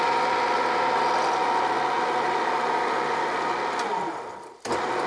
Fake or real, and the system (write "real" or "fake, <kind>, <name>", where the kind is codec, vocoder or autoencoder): real